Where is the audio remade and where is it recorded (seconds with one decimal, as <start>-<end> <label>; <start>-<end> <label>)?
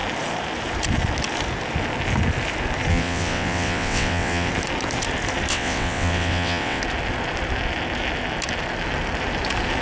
0.0-2.9 recorded; 2.9-4.5 remade; 4.5-5.5 recorded; 5.5-6.8 remade; 6.8-9.8 recorded